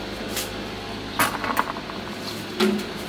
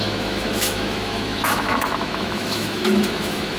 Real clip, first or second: first